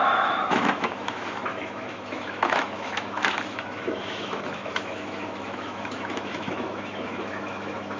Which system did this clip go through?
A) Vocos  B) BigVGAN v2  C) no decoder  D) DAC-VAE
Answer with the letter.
D